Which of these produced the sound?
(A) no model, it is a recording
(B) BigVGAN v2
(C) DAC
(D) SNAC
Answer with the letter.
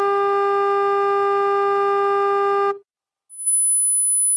A